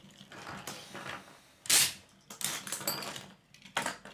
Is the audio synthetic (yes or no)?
no